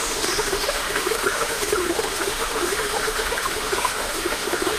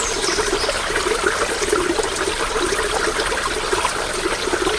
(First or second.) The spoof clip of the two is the first